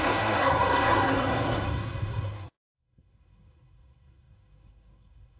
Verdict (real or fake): fake